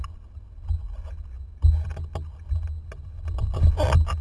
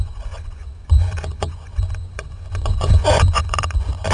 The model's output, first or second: second